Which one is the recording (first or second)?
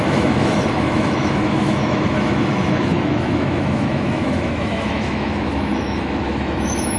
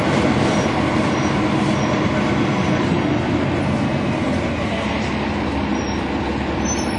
second